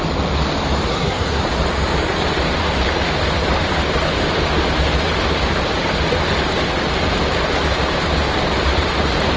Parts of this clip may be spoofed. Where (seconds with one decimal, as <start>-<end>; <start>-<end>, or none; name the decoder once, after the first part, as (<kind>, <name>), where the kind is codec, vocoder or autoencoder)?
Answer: 0.9-1.4 (codec, SNAC)